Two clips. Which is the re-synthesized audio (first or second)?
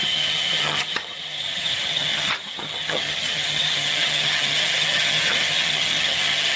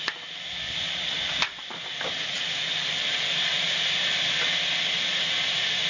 first